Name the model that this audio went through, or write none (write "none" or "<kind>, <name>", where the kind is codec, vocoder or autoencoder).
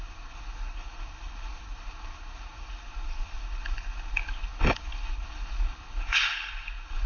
codec, HILCodec